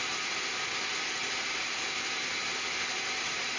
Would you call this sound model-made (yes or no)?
no